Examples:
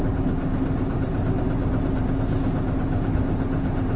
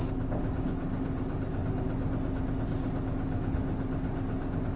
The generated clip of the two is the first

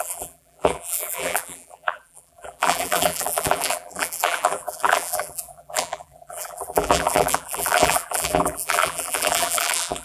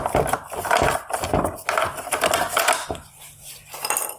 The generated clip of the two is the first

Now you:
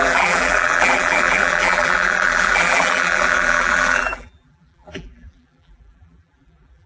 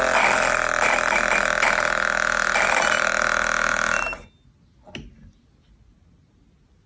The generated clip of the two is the first